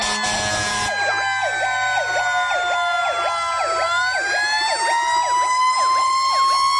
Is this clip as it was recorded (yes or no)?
yes